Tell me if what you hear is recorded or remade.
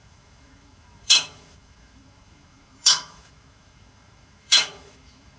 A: remade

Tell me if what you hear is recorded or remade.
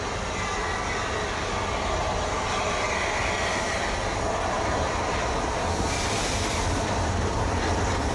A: recorded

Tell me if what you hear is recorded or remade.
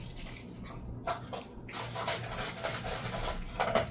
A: recorded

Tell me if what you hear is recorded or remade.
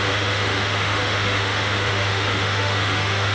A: remade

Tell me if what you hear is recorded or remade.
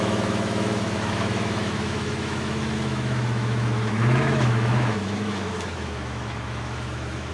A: remade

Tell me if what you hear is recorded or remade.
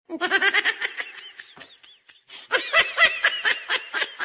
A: recorded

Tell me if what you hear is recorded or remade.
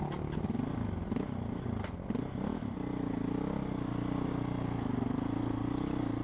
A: recorded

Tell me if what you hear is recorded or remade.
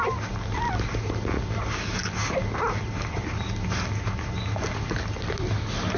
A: recorded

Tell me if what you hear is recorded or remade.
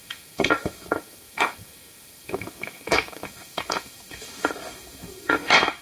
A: remade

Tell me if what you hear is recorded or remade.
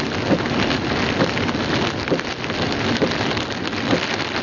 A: recorded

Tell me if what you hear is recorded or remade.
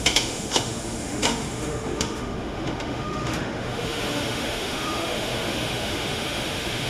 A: remade